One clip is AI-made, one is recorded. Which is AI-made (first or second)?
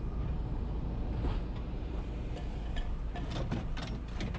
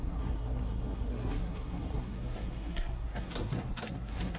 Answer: second